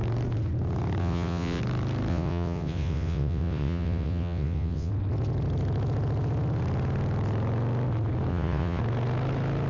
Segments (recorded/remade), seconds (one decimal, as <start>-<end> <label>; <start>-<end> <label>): 0.0-1.0 recorded; 1.0-1.6 remade; 1.6-2.1 recorded; 2.1-4.9 remade; 4.9-8.3 recorded; 8.3-8.8 remade; 8.8-9.7 recorded